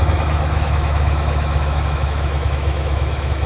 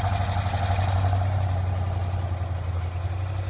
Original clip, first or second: second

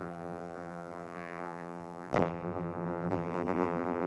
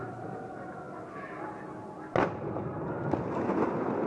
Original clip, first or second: second